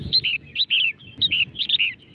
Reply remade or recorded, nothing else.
recorded